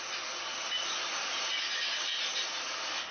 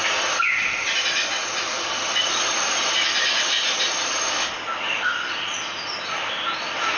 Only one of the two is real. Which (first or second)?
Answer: first